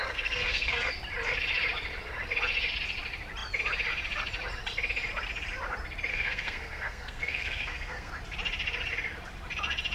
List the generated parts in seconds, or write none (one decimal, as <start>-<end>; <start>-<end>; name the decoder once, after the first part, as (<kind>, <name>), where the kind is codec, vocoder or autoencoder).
0.0-0.9 (codec, SNAC); 6.1-8.1